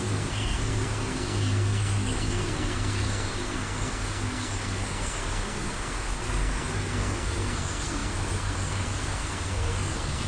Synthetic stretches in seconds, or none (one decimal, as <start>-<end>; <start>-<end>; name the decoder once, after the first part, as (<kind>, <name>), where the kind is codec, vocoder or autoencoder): 0.0-10.3 (codec, SNAC)